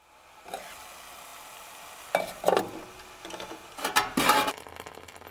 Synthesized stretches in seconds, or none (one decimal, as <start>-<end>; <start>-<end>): none